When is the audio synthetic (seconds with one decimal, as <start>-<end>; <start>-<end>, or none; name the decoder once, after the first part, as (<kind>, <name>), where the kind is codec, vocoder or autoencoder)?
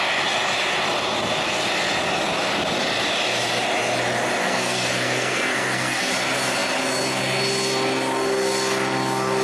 4.4-6.1 (codec, SNAC)